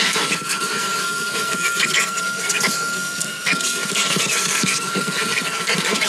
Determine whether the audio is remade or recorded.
remade